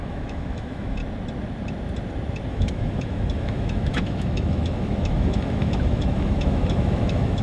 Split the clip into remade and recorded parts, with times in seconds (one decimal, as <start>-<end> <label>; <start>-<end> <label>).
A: 0.0-1.0 remade; 1.0-2.5 recorded; 2.5-7.4 remade